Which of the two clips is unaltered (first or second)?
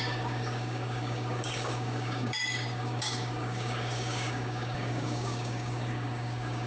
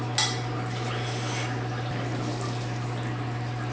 second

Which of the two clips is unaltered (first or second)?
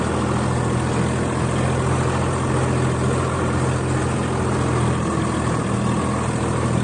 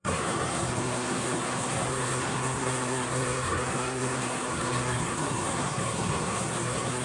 first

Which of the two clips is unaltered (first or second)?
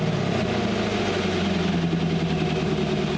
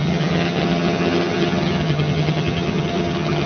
first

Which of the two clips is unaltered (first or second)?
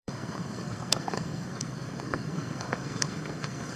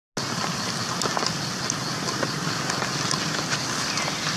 second